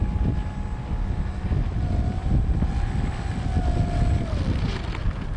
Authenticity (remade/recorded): recorded